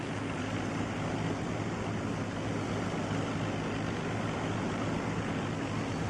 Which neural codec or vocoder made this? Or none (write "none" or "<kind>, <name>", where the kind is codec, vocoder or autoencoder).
none